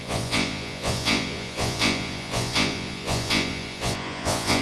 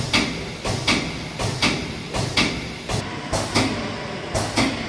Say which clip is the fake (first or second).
first